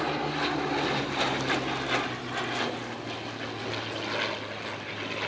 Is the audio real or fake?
real